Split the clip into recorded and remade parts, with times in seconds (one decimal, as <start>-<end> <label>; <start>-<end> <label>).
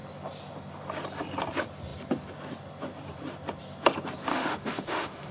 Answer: 0.0-4.3 recorded; 4.3-5.3 remade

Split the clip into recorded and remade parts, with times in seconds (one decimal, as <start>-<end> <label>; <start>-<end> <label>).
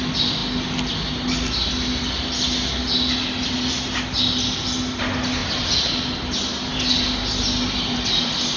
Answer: 0.0-8.6 recorded